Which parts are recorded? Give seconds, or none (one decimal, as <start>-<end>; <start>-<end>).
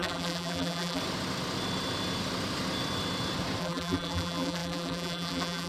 1.0-3.6